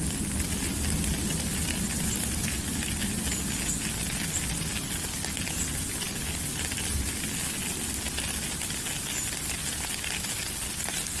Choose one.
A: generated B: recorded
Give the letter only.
B